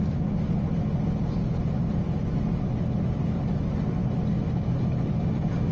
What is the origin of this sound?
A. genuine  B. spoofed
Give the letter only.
A